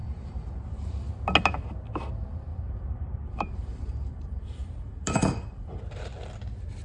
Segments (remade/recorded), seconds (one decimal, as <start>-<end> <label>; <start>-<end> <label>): 0.0-1.1 remade; 1.1-2.5 recorded; 2.5-5.8 remade; 5.8-6.8 recorded